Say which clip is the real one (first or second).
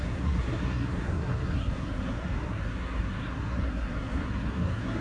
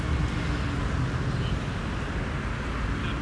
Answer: second